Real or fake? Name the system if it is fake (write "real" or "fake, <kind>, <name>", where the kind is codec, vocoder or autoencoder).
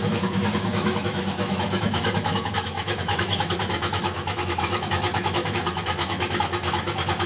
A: fake, autoencoder, DAC-VAE